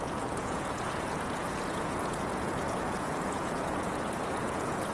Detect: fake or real fake